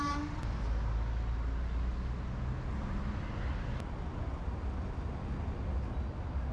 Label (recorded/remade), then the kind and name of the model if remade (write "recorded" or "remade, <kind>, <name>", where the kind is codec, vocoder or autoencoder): recorded